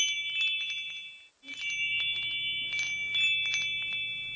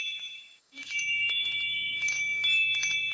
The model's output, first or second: second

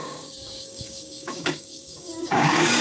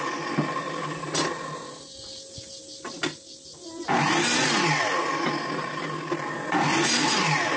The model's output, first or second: first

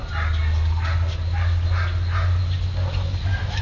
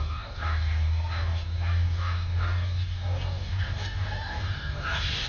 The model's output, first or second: second